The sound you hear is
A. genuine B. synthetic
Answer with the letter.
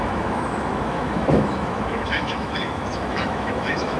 B